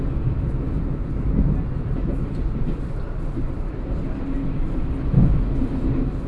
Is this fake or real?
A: real